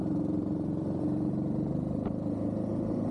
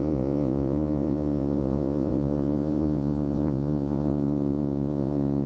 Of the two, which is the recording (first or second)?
first